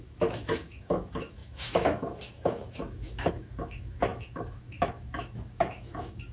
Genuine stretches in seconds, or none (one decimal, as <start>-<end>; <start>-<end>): none